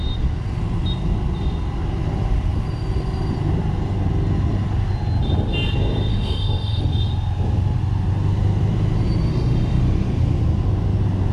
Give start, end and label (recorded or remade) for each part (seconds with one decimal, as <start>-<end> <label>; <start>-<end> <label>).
0.0-6.1 recorded; 6.1-6.8 remade; 6.8-9.3 recorded; 9.3-9.8 remade; 9.8-11.3 recorded